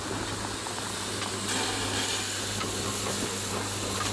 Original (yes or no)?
yes